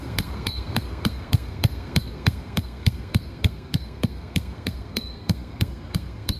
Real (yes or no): no